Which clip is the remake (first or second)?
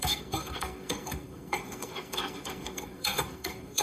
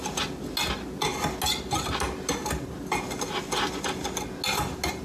first